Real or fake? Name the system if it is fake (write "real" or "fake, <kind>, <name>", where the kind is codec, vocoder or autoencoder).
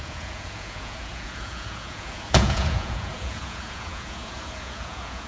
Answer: fake, vocoder, Vocos